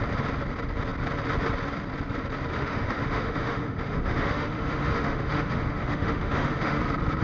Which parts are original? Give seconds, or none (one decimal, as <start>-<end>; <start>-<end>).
0.0-2.5; 6.8-7.2